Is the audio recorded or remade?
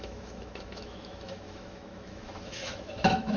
remade